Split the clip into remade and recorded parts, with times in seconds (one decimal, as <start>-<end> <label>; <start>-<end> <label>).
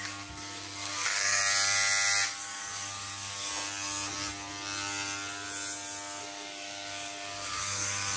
0.0-1.4 remade; 1.4-2.4 recorded; 2.4-3.5 remade; 3.5-6.2 recorded; 6.2-8.2 remade